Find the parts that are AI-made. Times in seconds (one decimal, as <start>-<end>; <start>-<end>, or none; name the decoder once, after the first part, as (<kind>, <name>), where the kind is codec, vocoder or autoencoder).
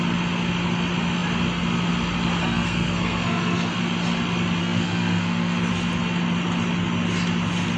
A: 2.4-3.8 (codec, SNAC); 4.6-5.7